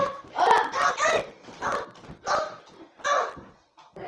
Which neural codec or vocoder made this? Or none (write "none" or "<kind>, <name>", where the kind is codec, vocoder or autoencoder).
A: none